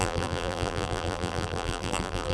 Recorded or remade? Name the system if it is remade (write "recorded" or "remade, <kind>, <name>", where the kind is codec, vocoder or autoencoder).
remade, vocoder, BigVGAN v2